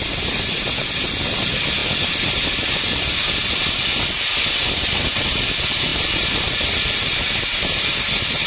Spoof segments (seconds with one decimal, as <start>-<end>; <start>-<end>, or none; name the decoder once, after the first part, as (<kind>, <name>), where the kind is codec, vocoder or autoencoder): none